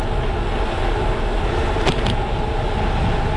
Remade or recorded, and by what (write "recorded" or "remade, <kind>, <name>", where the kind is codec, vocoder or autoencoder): recorded